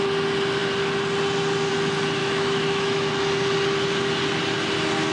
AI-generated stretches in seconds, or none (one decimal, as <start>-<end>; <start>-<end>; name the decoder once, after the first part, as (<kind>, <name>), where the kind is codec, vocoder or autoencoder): 2.2-3.1 (autoencoder, DAC-VAE)